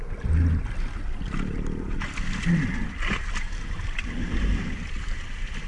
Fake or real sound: real